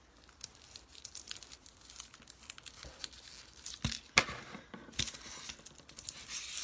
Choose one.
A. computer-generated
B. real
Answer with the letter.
B